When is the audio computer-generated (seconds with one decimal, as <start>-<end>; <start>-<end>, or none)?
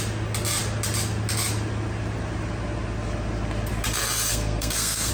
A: 4.3-5.1